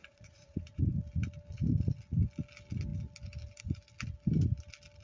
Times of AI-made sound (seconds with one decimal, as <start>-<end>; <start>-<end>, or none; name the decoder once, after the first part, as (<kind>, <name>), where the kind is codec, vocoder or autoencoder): 0.0-0.8 (vocoder, Vocos)